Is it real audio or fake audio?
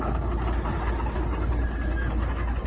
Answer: real